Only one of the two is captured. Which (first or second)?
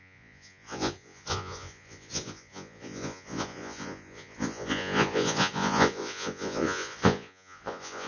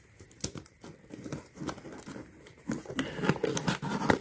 second